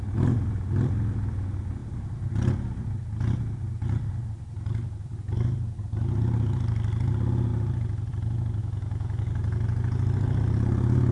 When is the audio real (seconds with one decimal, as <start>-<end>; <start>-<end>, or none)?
0.0-8.6; 9.2-11.1